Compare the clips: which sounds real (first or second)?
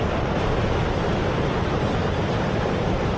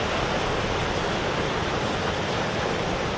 second